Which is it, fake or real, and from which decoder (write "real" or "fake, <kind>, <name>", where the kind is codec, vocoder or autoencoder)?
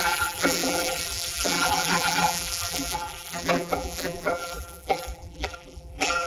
fake, vocoder, BigVGAN v2